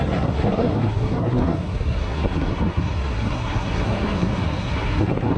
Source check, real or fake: fake